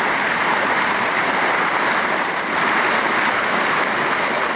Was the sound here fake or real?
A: real